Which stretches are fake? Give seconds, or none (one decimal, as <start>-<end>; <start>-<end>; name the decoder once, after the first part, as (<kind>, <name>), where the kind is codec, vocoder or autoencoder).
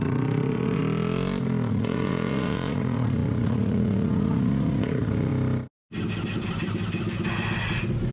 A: 0.0-0.8 (vocoder, Vocos); 1.7-5.3